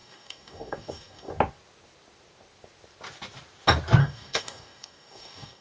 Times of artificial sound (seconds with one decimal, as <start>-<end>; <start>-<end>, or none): 0.0-1.3; 4.0-5.6